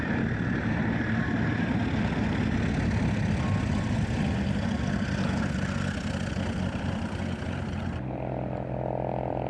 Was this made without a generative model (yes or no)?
yes